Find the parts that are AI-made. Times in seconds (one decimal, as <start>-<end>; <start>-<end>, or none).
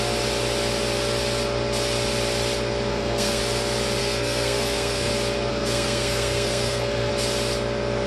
2.9-3.4; 4.0-5.1; 5.5-7.1